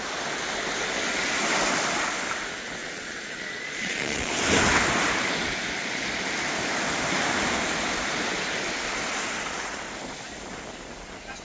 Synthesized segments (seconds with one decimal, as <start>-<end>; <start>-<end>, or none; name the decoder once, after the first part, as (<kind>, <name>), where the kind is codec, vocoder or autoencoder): 2.8-4.3 (vocoder, Vocos)